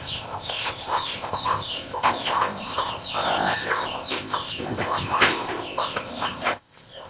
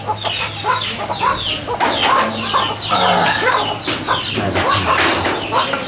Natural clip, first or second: second